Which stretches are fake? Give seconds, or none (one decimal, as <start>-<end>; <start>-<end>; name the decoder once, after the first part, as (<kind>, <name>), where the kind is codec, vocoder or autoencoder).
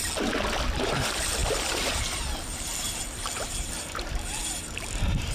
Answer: 0.9-5.3 (vocoder, BigVGAN v2)